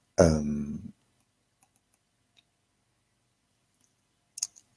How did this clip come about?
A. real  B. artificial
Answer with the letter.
A